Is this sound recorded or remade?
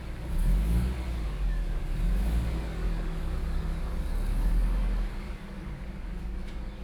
remade